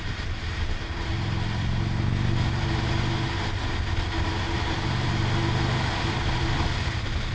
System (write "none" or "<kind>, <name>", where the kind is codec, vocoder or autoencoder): none